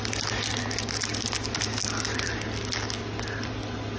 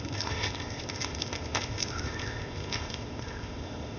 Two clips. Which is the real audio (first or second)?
first